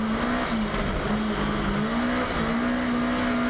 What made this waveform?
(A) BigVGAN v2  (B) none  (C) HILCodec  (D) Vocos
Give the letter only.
B